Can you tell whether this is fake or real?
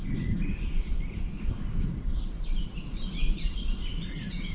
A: fake